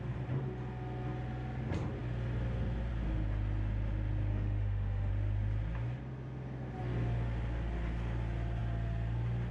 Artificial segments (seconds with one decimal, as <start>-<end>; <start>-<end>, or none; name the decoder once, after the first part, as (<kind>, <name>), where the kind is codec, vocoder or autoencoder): 4.3-5.1 (autoencoder, DAC-VAE)